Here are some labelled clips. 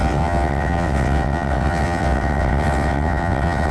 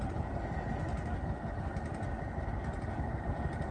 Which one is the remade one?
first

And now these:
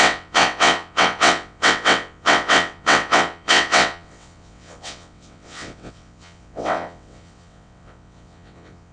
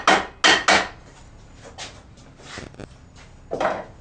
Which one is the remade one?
first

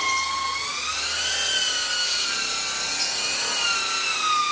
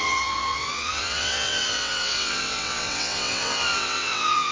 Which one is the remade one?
second